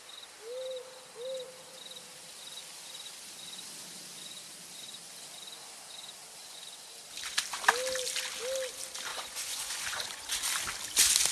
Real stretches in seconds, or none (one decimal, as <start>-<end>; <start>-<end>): 0.0-6.4; 6.9-9.1; 10.3-11.3